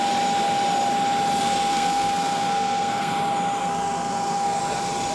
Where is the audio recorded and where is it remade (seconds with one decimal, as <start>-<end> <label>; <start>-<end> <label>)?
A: 0.0-1.4 recorded; 1.4-3.1 remade; 3.1-3.6 recorded; 3.6-4.6 remade; 4.6-5.1 recorded